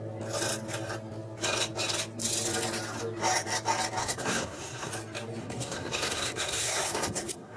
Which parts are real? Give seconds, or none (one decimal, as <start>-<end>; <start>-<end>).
0.0-4.0; 4.9-5.4